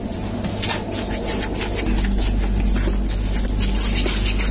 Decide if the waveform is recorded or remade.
recorded